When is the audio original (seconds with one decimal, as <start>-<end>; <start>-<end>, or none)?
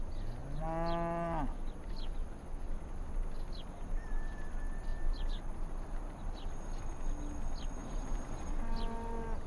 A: 0.0-4.9; 6.8-7.8; 8.5-9.5